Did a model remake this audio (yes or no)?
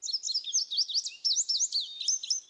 no